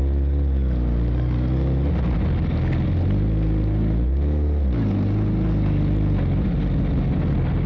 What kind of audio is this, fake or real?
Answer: real